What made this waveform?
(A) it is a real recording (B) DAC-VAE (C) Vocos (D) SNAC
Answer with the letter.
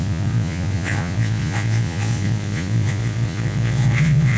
C